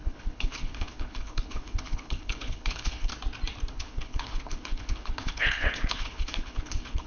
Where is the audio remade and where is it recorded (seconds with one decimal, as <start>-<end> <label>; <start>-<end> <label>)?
0.0-3.1 remade; 3.1-3.7 recorded; 3.7-7.1 remade